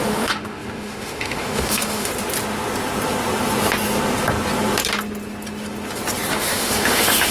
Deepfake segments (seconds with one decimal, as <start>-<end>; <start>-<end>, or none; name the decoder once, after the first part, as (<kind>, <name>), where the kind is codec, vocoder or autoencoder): 0.0-2.1 (autoencoder, DAC-VAE); 6.3-7.3